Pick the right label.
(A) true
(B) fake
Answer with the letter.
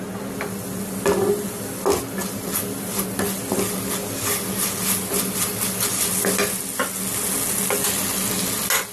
A